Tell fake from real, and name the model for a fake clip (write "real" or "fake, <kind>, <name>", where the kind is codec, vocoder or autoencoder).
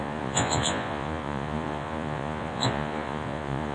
fake, vocoder, Vocos